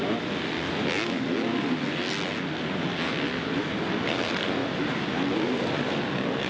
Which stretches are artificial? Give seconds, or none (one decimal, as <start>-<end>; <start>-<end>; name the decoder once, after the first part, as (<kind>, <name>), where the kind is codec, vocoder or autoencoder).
none